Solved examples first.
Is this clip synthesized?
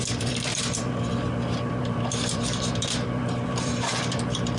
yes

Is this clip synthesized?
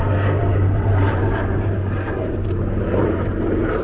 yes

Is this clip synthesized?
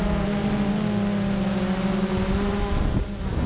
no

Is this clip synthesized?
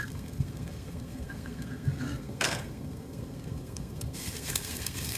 yes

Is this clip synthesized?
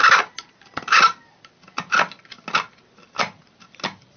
no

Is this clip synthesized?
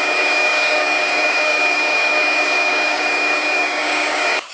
yes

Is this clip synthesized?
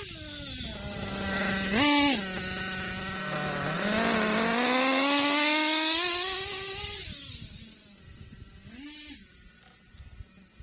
no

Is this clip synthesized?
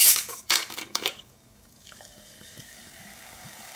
yes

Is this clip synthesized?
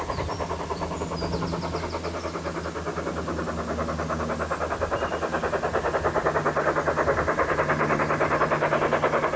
no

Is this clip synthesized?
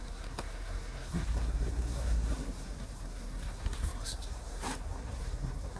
yes